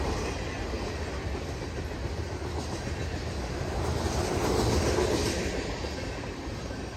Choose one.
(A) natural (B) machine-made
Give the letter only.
A